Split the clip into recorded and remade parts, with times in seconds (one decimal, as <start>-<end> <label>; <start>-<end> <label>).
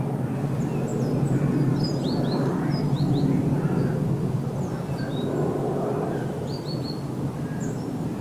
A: 0.0-8.2 recorded